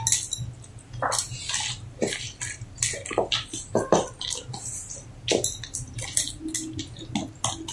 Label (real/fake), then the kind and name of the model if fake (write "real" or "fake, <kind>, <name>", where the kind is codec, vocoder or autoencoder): real